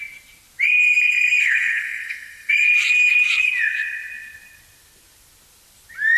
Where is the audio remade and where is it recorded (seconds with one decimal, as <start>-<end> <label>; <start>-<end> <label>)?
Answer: 0.0-1.4 recorded; 1.4-2.5 remade; 2.5-6.2 recorded